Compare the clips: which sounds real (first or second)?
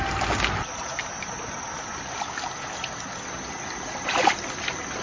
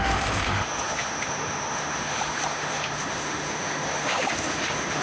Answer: first